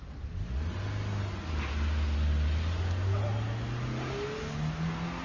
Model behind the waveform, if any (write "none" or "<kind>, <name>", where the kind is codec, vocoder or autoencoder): none